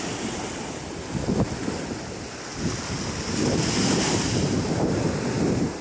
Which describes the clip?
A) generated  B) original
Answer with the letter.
B